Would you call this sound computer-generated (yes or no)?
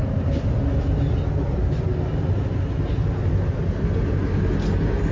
no